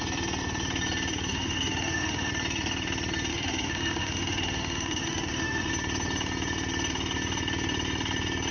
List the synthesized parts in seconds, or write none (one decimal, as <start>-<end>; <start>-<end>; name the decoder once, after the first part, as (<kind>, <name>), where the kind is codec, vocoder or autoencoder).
1.3-2.3 (autoencoder, DAC-VAE); 3.3-5.7